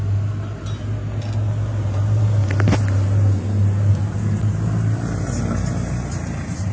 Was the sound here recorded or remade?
recorded